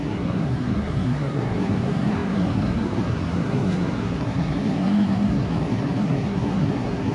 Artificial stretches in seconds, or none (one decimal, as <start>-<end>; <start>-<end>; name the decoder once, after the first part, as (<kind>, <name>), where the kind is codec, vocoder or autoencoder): 0.0-7.1 (codec, SNAC)